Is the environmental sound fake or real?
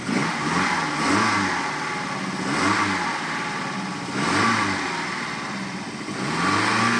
real